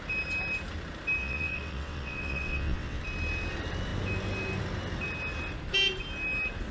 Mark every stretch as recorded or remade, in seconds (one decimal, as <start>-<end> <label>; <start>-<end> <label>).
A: 0.0-1.2 recorded; 1.2-3.0 remade; 3.0-6.7 recorded